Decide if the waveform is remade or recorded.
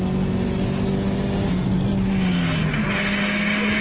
recorded